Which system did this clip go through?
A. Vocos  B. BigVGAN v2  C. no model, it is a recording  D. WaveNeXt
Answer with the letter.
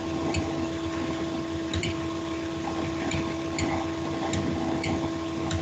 B